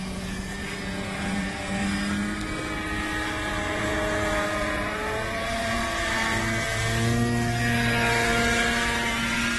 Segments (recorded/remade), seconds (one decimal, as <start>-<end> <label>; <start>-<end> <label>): 0.0-1.8 remade; 1.8-3.5 recorded; 3.5-6.2 remade; 6.2-9.6 recorded